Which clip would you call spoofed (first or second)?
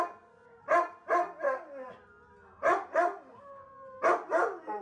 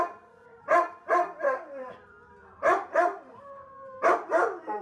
second